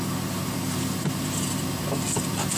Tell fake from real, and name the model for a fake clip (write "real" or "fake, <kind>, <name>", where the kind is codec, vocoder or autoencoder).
fake, vocoder, BigVGAN v2